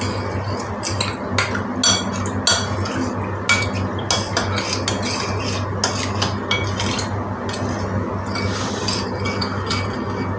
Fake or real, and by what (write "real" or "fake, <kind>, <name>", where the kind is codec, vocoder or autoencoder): real